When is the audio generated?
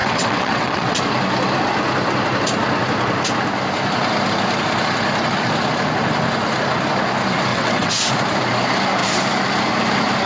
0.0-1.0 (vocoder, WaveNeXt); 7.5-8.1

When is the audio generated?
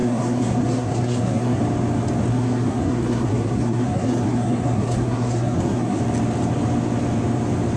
0.0-1.6 (codec, SNAC); 2.3-6.0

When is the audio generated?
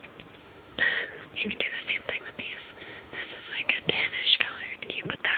0.4-1.1 (autoencoder, DAC-VAE); 1.7-4.6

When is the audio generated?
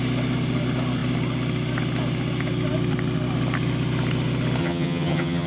4.6-5.5 (vocoder, HiFi-GAN)